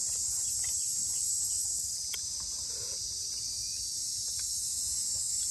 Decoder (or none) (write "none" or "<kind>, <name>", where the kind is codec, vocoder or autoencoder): vocoder, BigVGAN v2